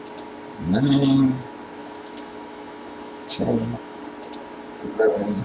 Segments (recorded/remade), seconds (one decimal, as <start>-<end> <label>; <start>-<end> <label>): 0.0-1.8 recorded; 1.8-4.0 remade; 4.0-5.4 recorded